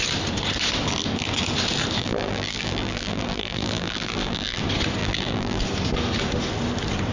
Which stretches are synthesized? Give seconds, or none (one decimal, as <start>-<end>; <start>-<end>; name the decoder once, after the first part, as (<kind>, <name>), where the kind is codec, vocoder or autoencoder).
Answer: 2.0-4.6 (vocoder, BigVGAN v2); 5.0-5.6